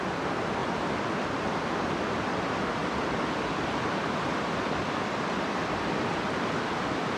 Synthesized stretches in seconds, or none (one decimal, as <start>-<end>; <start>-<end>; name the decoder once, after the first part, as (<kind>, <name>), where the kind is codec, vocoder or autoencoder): 0.0-7.2 (vocoder, BigVGAN v2)

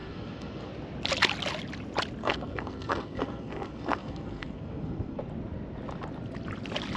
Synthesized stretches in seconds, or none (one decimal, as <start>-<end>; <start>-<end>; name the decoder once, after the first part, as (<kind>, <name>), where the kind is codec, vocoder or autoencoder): 0.0-0.7 (codec, SNAC); 2.2-5.2

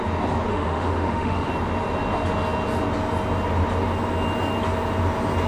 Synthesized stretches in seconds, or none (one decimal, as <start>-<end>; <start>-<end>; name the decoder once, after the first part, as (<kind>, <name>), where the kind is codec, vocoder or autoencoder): 0.5-1.5 (autoencoder, DAC-VAE)